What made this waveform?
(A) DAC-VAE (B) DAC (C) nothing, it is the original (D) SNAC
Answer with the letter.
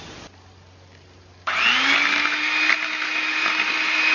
C